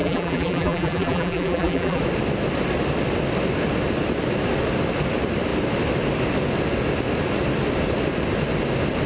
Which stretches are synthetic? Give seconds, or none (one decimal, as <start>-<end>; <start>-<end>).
0.0-2.0